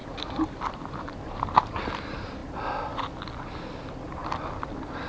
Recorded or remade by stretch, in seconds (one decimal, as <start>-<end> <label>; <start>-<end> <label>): 0.0-1.9 remade; 1.9-5.1 recorded